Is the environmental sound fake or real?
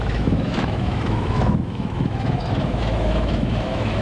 fake